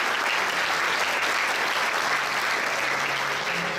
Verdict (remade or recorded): recorded